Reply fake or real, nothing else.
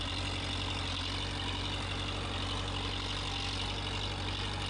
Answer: real